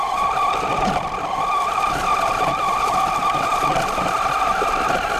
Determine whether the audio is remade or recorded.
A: recorded